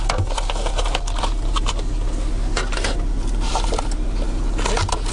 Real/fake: real